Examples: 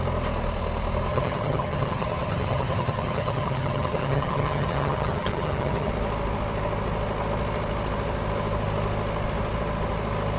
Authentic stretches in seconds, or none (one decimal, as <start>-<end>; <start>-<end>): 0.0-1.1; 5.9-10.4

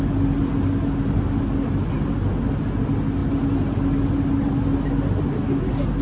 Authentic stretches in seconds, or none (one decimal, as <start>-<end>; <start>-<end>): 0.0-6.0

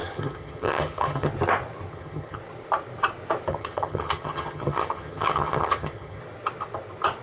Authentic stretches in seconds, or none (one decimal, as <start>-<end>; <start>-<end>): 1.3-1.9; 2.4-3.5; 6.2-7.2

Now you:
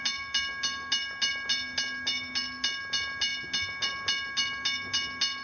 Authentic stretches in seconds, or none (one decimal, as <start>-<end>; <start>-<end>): 0.0-5.4

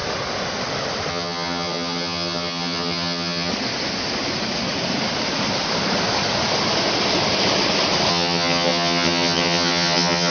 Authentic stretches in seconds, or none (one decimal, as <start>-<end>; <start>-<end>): 0.0-1.1; 3.5-8.1

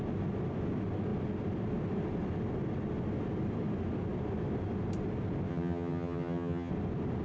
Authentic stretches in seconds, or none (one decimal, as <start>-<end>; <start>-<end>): 0.0-5.5; 6.7-7.2